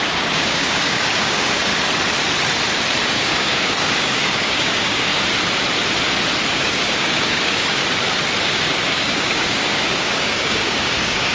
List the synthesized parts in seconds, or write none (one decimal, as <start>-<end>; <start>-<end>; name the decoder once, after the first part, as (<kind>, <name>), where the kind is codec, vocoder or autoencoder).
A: 0.0-1.7 (codec, DAC); 3.1-5.1; 6.5-7.8; 8.4-11.3